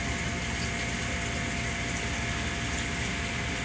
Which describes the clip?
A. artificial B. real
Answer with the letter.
B